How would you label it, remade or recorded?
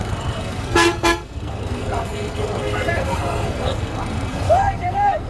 remade